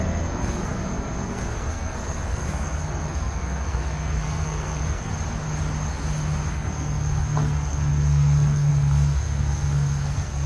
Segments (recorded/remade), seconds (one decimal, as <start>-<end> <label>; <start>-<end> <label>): 0.0-5.1 remade; 5.1-6.5 recorded; 6.5-10.5 remade